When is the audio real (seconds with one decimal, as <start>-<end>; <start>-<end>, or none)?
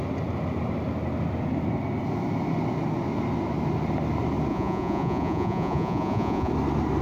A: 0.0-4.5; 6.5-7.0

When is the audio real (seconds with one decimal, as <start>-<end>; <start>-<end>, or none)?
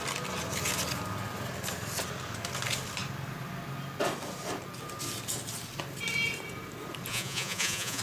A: 0.0-7.1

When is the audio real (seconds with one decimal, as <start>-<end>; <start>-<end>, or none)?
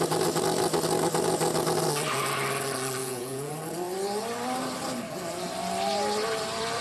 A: 0.0-3.0; 3.5-6.8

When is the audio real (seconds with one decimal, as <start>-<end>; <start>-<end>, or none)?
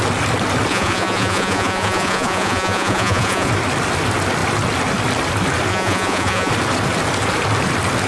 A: 0.0-0.7; 3.5-5.7; 6.5-8.1